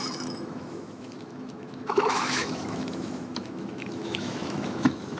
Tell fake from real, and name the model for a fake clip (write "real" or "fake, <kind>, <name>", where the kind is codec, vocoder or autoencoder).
fake, autoencoder, DAC-VAE